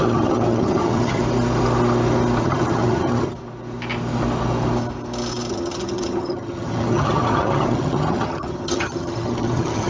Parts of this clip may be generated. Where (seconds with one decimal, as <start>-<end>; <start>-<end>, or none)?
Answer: 0.0-1.2; 2.4-3.3; 5.5-9.9